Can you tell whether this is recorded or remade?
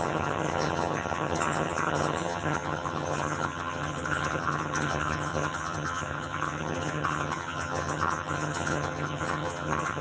remade